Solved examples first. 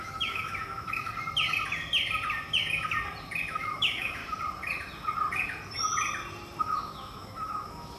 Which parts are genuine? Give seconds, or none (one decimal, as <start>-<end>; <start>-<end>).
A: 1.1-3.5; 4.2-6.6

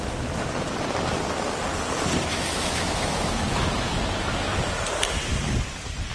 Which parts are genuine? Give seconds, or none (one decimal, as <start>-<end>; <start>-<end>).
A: 0.0-2.3; 3.9-6.1

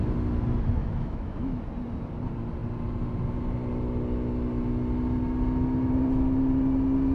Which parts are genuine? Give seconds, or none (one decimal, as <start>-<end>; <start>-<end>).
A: 0.0-0.8; 1.6-7.1